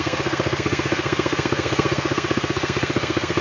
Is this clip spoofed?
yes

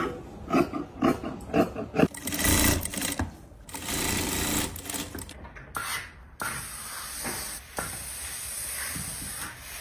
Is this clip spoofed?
no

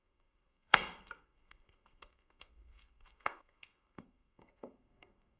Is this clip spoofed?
yes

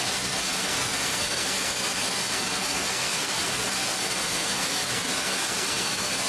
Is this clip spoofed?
yes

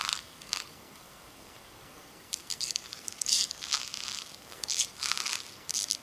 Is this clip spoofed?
yes